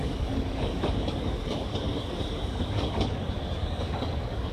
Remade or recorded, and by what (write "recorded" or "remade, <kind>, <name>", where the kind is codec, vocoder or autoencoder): remade, codec, DAC